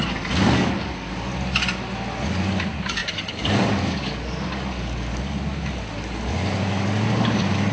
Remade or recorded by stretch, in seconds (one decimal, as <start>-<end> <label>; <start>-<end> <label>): 0.0-1.3 remade; 1.3-2.2 recorded; 2.2-7.7 remade